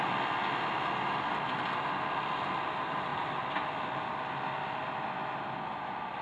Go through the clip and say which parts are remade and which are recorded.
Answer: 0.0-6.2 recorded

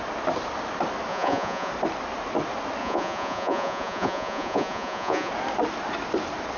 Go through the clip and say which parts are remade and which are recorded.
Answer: 0.0-1.1 recorded; 1.1-1.7 remade; 1.7-2.8 recorded; 2.8-5.3 remade; 5.3-6.6 recorded

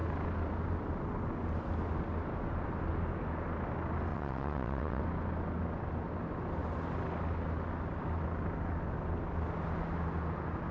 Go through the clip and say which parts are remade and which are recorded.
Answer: 0.0-4.1 recorded; 4.1-5.0 remade; 5.0-10.7 recorded

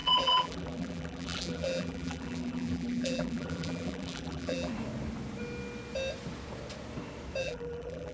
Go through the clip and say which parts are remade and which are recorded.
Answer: 0.0-4.7 remade; 4.7-7.4 recorded; 7.4-8.1 remade

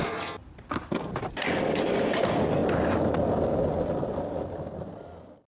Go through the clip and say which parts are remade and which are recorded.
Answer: 0.0-5.5 recorded